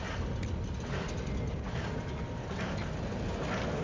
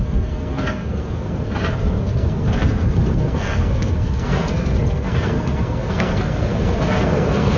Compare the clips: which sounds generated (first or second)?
second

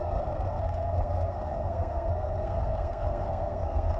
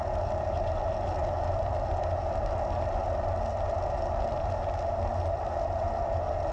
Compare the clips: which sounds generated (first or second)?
first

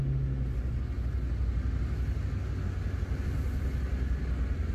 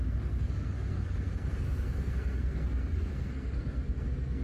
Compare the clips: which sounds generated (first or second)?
second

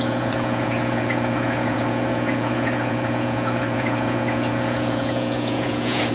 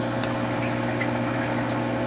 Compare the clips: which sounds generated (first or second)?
first